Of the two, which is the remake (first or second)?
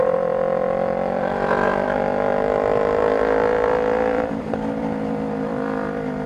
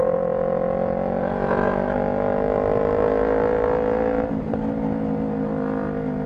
first